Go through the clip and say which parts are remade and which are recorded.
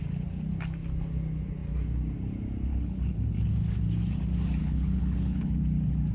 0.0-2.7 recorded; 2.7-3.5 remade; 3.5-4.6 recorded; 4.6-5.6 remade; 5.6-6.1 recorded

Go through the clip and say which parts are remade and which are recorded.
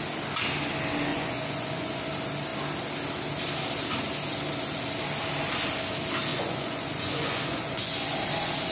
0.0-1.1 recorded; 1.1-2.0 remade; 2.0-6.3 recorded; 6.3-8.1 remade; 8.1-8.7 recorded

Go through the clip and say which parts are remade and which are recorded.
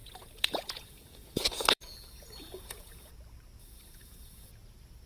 0.0-3.1 remade; 3.1-3.6 recorded; 3.6-4.5 remade; 4.5-5.1 recorded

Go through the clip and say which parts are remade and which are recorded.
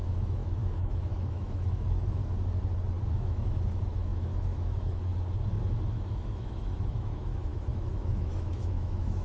0.0-2.2 remade; 2.2-3.1 recorded; 3.1-5.1 remade; 5.1-5.9 recorded; 5.9-9.2 remade